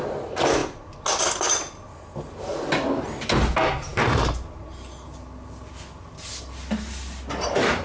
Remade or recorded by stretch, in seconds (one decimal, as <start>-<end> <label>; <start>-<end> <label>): 0.0-7.8 recorded